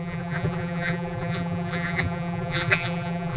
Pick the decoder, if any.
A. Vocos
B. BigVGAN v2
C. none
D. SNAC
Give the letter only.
B